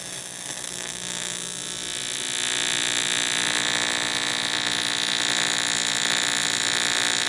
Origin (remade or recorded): recorded